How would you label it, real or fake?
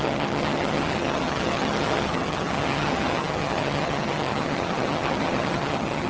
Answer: fake